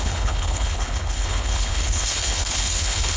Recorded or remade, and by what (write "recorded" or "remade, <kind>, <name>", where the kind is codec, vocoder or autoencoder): remade, codec, HILCodec